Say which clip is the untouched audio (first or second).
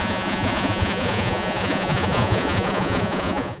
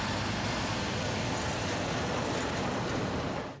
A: second